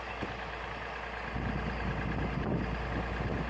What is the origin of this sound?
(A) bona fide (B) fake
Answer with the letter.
A